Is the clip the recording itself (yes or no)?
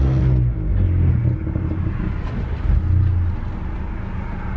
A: yes